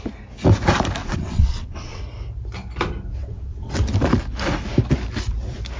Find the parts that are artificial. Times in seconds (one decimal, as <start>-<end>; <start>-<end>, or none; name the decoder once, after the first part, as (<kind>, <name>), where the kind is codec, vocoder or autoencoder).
1.0-2.0 (vocoder, WaveNeXt); 3.2-3.8